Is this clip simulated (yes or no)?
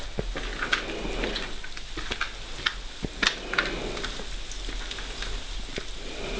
no